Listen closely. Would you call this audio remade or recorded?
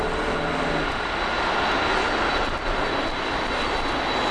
recorded